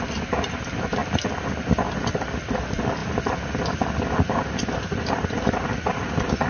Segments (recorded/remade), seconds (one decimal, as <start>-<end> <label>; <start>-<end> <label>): 0.0-6.5 recorded